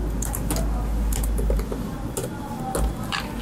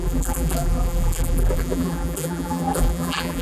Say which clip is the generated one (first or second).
second